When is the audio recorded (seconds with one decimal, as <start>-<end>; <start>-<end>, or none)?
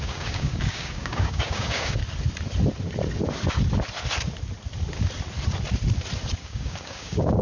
2.0-6.4